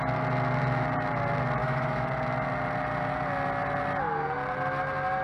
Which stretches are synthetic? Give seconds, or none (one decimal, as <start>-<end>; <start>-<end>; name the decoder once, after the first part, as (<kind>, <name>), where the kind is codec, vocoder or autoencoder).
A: 1.6-2.1 (autoencoder, DAC-VAE)